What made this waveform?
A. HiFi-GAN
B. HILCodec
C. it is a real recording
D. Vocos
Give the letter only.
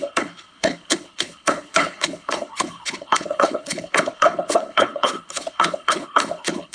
B